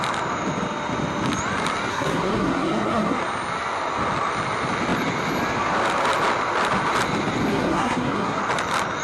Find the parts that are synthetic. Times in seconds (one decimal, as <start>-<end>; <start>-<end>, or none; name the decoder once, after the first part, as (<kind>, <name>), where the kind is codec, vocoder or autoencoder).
1.9-3.2 (codec, SNAC); 7.5-8.4